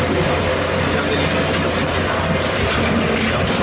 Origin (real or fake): real